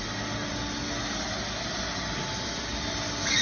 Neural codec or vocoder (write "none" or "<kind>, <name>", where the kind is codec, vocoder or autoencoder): none